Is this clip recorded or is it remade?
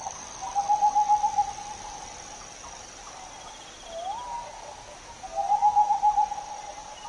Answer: recorded